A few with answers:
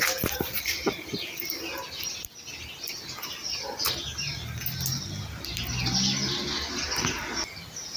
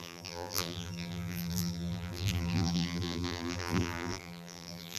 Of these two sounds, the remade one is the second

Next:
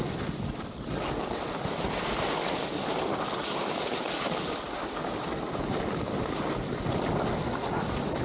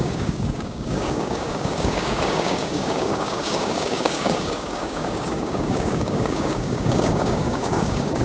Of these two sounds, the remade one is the second